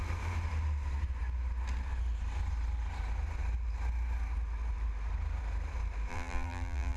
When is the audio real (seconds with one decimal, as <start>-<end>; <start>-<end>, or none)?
0.0-6.1